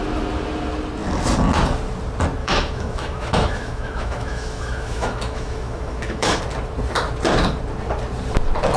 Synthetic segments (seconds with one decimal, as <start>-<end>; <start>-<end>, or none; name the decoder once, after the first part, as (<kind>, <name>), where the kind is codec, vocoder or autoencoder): 2.4-6.4 (autoencoder, DAC-VAE)